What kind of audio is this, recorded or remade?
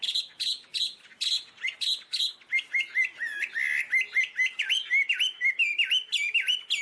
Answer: recorded